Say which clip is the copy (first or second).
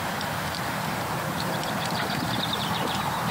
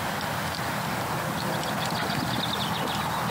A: first